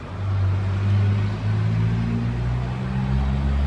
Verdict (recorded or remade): recorded